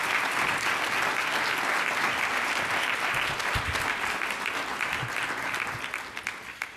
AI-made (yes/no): no